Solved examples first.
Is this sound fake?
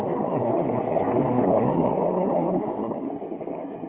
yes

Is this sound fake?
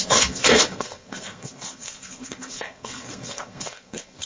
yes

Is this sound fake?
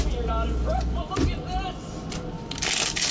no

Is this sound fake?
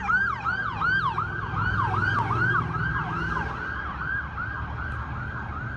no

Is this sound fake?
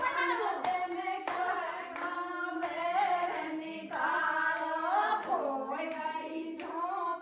no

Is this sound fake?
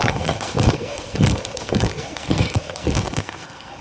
yes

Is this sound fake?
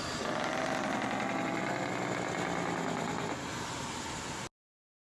no